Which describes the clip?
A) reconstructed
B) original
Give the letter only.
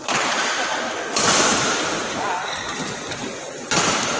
B